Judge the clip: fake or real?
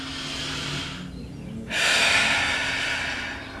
real